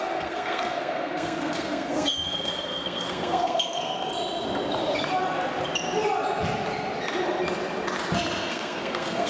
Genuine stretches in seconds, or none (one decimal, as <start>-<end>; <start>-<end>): 4.1-8.5